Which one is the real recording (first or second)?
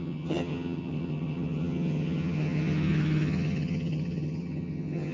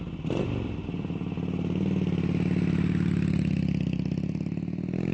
second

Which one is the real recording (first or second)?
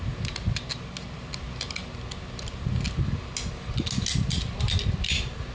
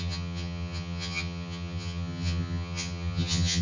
first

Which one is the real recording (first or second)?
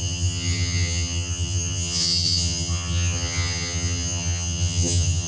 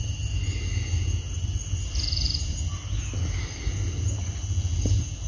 second